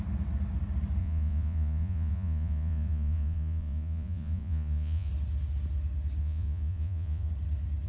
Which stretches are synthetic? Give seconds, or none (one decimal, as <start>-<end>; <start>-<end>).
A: 1.0-5.1; 6.2-7.3